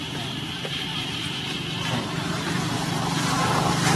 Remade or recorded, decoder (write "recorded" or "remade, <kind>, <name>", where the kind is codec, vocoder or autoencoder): remade, vocoder, BigVGAN v2